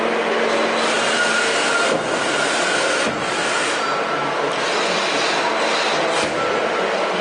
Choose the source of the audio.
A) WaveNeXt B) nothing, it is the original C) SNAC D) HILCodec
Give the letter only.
B